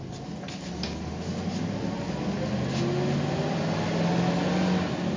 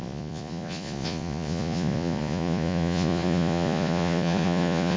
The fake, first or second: second